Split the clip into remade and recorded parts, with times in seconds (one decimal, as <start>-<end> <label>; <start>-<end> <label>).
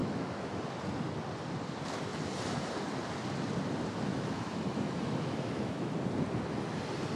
0.0-0.6 remade; 0.6-4.1 recorded; 4.1-5.9 remade; 5.9-7.2 recorded